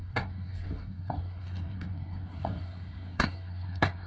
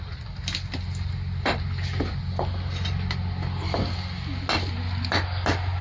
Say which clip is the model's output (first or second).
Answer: first